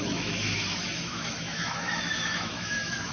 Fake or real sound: fake